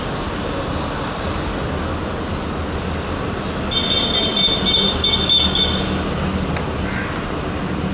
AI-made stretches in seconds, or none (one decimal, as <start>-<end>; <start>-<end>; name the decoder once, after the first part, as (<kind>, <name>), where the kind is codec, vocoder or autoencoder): none